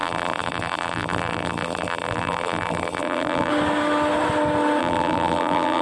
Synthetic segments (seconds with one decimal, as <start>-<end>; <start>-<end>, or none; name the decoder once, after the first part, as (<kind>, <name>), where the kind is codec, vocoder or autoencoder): 0.0-3.5 (vocoder, BigVGAN v2); 4.8-5.8